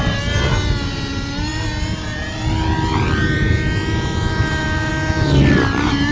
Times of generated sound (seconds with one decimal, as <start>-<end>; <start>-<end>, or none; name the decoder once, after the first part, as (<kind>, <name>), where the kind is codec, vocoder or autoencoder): none